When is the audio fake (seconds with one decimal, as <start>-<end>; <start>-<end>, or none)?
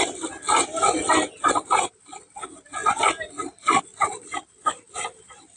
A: none